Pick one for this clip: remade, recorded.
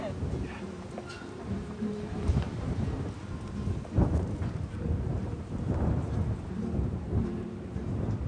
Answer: remade